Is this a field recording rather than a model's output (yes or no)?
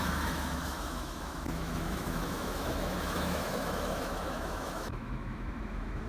no